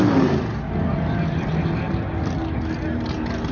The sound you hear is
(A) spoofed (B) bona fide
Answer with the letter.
B